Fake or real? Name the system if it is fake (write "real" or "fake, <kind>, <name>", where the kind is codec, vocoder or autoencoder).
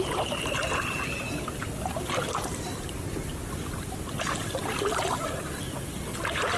real